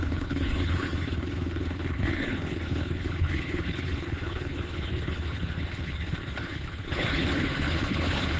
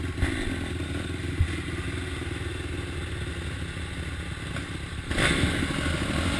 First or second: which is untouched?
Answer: second